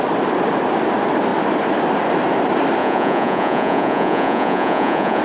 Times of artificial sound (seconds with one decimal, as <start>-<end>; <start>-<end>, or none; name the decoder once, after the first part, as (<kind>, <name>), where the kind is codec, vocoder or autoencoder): 2.8-5.2 (vocoder, Vocos)